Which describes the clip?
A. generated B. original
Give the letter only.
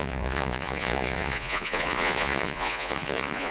A